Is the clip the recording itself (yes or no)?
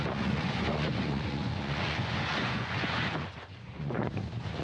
no